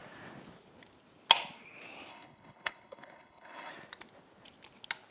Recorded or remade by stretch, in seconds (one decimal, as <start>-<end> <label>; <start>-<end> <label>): 0.0-2.1 recorded; 2.1-3.7 remade; 3.7-5.1 recorded